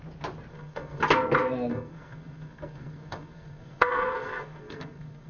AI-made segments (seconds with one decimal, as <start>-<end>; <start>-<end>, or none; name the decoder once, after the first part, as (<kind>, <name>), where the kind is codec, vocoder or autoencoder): 0.5-1.0 (codec, SNAC); 1.7-5.3